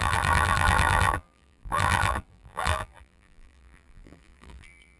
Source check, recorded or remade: remade